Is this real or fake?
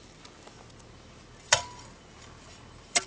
real